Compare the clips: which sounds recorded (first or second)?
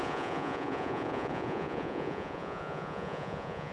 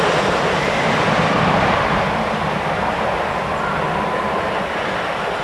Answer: second